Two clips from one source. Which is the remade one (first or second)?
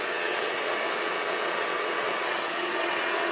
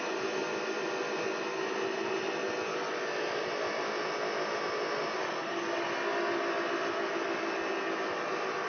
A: first